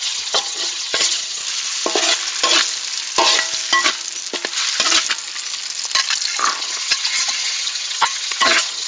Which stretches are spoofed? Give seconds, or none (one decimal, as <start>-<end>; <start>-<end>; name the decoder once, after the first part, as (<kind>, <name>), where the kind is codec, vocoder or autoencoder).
0.0-1.4 (vocoder, HiFi-GAN); 6.6-8.9